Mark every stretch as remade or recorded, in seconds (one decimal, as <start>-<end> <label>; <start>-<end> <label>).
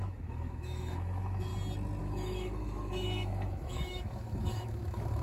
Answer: 0.0-1.5 remade; 1.5-2.0 recorded; 2.0-5.2 remade